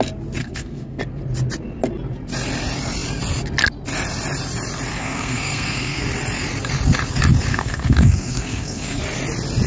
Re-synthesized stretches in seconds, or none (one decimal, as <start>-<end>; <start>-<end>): 0.4-1.0; 4.9-6.0; 7.5-9.0

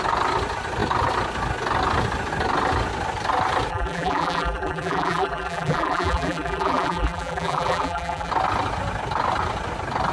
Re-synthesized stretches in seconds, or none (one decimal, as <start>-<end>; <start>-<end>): 3.7-8.3

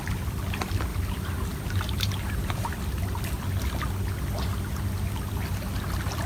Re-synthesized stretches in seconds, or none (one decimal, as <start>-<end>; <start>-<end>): 0.9-2.8

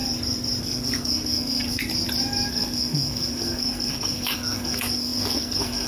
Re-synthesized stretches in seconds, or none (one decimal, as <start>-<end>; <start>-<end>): 0.6-1.9; 2.5-5.9

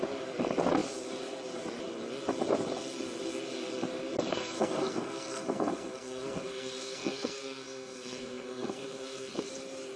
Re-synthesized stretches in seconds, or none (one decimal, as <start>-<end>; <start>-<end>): 4.3-9.5

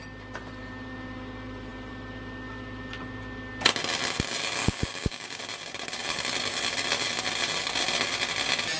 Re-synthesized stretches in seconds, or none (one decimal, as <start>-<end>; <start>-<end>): 4.6-5.4

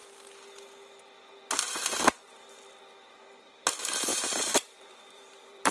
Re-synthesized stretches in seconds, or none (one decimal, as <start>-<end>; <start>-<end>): 4.1-5.7